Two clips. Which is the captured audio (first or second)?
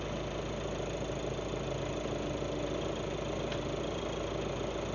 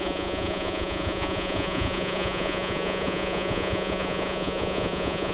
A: first